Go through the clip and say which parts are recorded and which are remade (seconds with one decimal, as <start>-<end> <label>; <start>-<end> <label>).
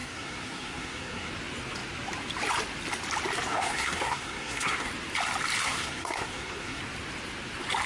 0.0-1.3 remade; 1.3-3.5 recorded; 3.5-4.9 remade; 4.9-5.6 recorded; 5.6-6.8 remade; 6.8-7.9 recorded